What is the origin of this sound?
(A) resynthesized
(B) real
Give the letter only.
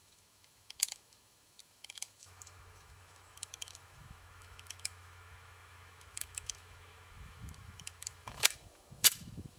A